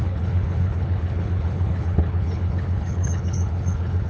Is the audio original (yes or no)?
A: no